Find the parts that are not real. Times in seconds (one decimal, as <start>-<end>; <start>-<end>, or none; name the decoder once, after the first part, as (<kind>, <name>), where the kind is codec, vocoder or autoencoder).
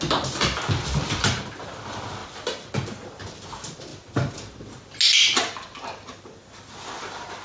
none